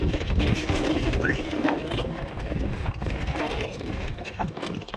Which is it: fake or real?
fake